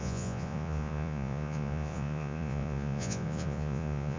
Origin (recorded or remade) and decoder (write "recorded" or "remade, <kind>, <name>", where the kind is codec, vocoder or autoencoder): remade, vocoder, Vocos